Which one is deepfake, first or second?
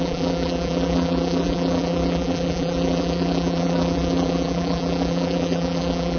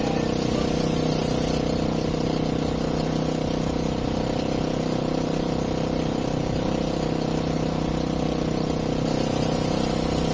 first